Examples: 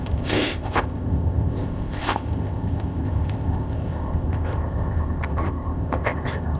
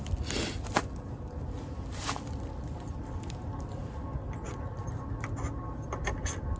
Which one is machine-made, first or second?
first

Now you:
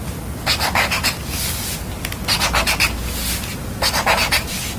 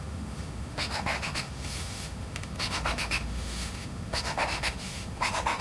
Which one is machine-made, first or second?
second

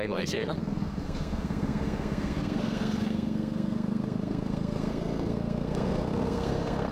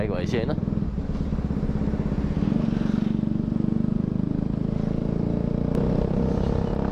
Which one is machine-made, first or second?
first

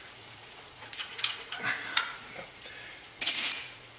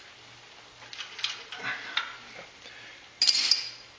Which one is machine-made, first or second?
first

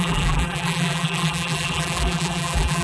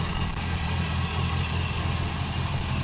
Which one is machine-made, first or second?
first